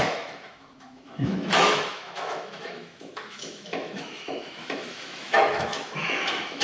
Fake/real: fake